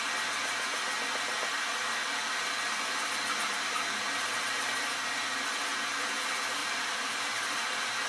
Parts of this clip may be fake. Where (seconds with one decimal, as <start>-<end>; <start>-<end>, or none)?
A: 6.6-7.2